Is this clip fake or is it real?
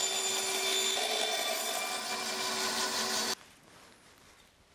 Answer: real